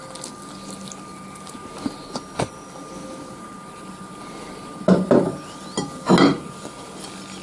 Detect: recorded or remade recorded